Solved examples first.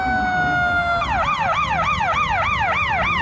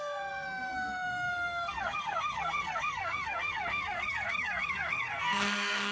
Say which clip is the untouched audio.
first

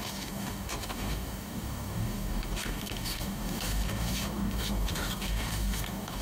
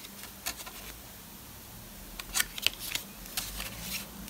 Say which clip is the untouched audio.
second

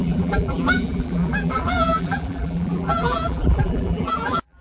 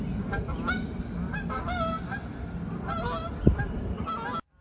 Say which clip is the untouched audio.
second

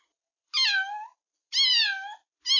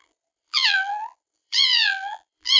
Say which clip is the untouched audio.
first